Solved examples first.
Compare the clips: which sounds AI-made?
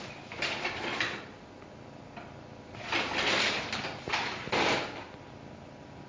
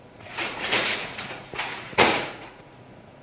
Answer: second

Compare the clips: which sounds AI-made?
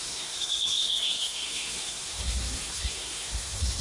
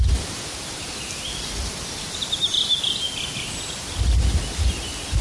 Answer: first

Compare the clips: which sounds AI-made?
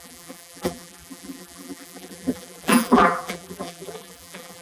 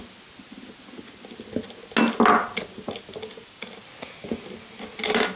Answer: first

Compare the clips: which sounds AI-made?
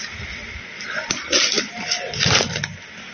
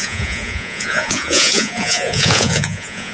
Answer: second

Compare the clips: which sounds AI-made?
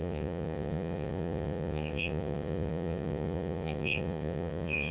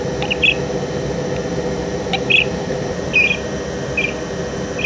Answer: first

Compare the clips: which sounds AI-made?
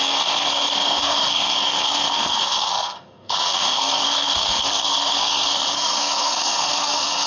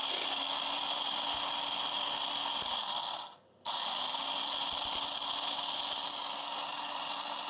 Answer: first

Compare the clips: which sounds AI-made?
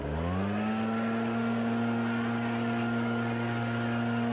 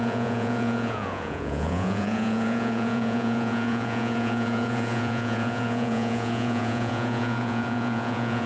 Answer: second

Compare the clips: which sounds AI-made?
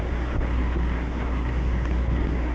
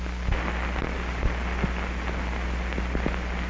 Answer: first